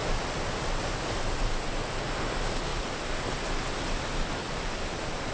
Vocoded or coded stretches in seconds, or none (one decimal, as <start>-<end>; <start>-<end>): 0.0-0.8; 2.7-3.2; 4.4-5.3